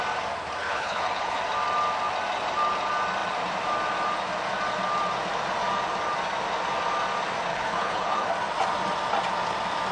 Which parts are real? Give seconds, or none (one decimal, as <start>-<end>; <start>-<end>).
0.0-0.6; 1.4-7.5; 8.3-9.9